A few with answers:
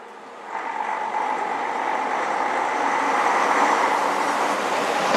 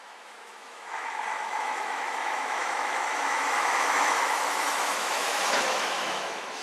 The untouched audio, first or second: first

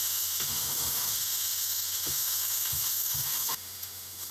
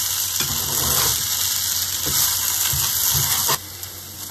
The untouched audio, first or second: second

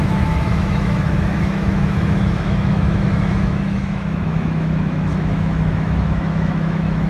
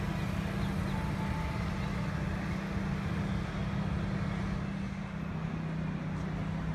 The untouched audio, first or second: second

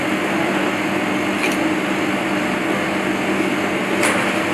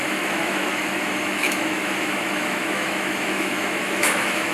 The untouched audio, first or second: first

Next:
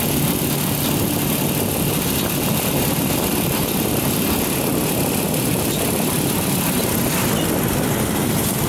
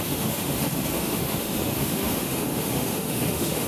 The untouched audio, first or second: first